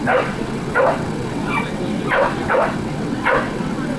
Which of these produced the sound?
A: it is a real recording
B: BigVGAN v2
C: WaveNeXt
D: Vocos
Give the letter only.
C